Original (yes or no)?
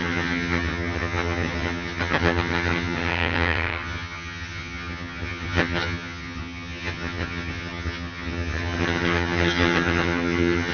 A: no